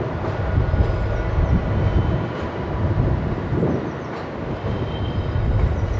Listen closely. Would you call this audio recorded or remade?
recorded